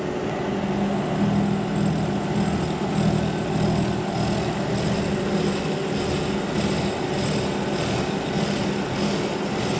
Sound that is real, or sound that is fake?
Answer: real